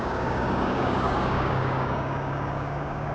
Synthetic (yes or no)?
yes